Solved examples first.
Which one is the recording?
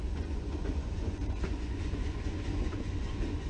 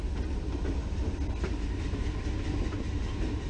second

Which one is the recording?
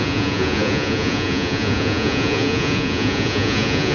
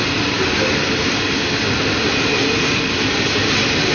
second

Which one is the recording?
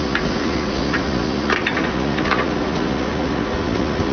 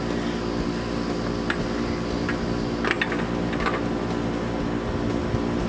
second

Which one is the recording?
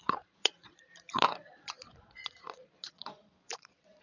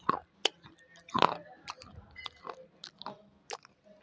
second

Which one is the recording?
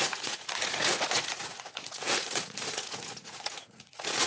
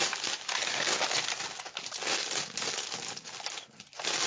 second